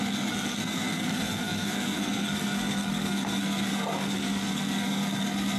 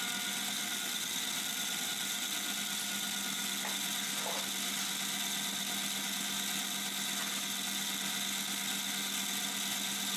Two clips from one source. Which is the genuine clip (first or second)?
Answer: second